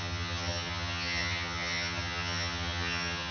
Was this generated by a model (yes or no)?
yes